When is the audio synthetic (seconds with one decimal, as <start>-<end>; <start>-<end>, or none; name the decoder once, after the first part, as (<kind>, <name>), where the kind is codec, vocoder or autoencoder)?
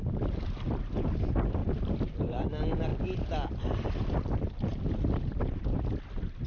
1.6-2.4 (vocoder, BigVGAN v2); 4.7-6.0